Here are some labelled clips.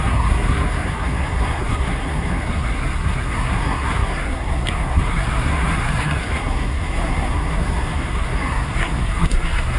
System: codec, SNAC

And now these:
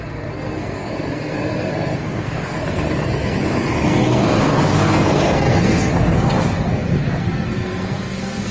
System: codec, SNAC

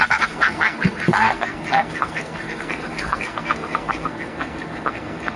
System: codec, SNAC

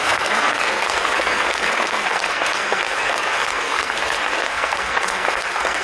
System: codec, SNAC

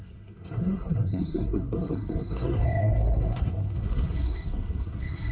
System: codec, SNAC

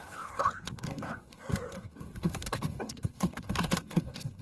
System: codec, SNAC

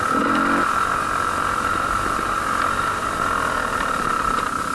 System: none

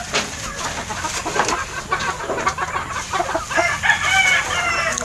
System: none